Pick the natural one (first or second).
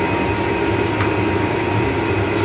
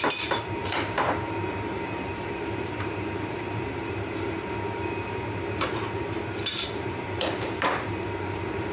first